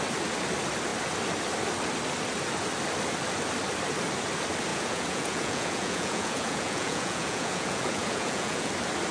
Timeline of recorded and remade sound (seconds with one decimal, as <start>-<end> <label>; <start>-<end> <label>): 0.0-4.7 recorded; 4.7-8.7 remade; 8.7-9.1 recorded